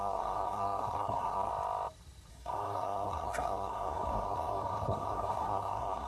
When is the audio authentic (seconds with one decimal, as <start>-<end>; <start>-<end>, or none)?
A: 1.5-2.3